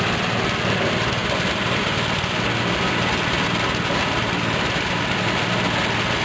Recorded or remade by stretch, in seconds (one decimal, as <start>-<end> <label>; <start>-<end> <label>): 0.0-6.2 recorded